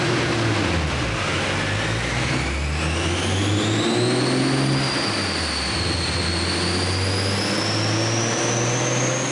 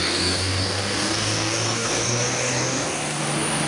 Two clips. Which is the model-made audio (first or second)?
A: second